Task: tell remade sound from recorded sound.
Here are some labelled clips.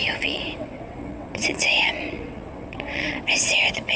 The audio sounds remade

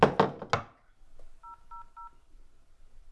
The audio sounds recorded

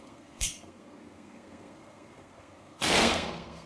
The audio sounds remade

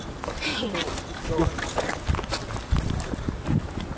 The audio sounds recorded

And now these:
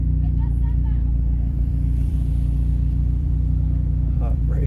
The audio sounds remade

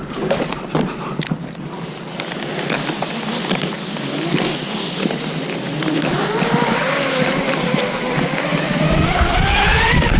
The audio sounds recorded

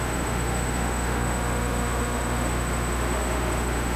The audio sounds remade